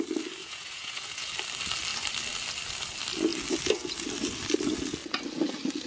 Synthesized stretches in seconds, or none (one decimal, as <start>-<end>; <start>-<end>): 0.4-1.3